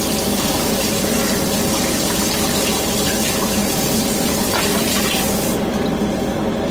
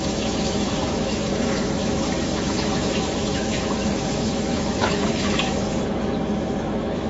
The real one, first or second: first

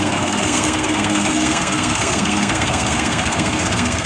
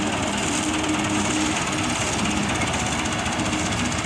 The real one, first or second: second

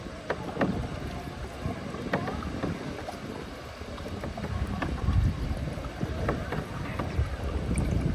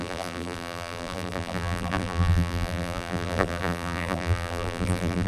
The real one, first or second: first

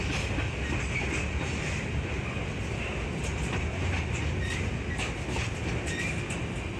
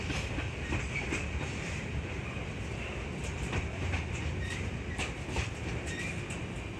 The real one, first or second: first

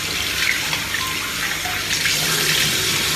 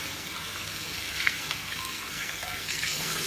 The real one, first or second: first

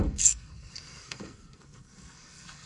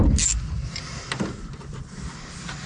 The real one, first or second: second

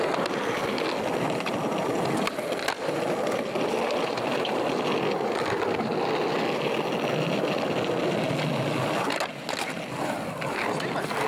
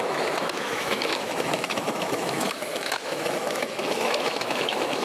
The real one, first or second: first